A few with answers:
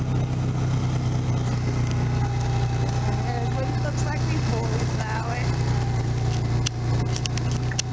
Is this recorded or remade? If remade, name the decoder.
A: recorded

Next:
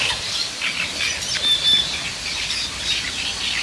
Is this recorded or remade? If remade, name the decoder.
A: recorded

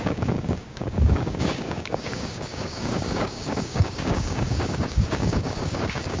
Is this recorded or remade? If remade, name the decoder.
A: remade, codec, DAC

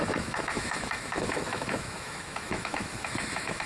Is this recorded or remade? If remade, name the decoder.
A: remade, autoencoder, DAC-VAE